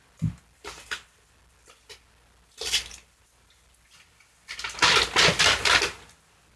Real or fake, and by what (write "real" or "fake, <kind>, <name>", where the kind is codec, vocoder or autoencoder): real